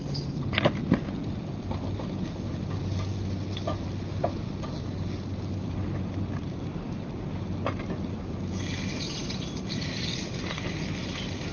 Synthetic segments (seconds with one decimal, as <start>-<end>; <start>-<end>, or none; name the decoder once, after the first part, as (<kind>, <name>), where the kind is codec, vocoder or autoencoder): 9.2-9.9 (vocoder, BigVGAN v2)